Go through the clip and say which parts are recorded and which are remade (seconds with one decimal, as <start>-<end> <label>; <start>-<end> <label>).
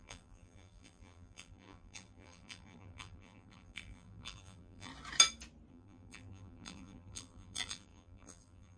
0.0-4.9 remade; 4.9-5.7 recorded; 5.7-8.8 remade